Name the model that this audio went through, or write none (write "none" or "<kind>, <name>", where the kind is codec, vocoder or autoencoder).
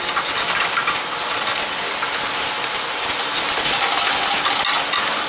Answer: none